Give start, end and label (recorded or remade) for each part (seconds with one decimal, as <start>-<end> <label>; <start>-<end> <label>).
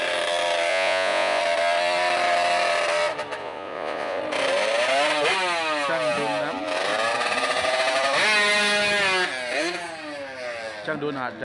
0.0-0.7 recorded; 0.7-1.4 remade; 1.4-3.4 recorded; 3.4-4.2 remade; 4.2-11.4 recorded